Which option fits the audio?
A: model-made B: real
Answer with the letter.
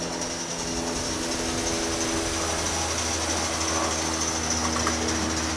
B